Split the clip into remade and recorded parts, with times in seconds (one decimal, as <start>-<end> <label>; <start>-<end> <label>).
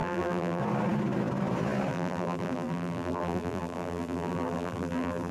0.0-0.6 remade; 0.6-1.9 recorded; 1.9-5.3 remade